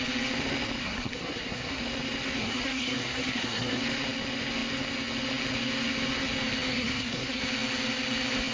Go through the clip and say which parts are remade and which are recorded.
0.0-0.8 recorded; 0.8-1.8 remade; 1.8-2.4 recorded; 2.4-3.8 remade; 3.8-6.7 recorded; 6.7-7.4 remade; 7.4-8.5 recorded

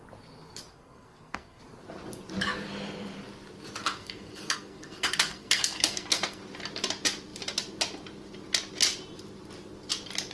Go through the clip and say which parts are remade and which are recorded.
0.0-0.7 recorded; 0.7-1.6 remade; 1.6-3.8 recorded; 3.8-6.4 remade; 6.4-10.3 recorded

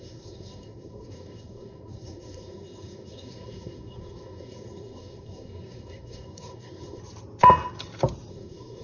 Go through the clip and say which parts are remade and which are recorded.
0.0-7.0 remade; 7.0-8.3 recorded; 8.3-8.8 remade